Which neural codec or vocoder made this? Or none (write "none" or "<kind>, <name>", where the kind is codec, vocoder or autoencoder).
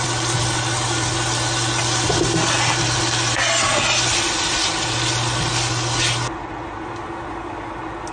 none